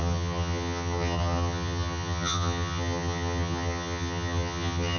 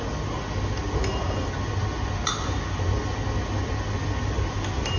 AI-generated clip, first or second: first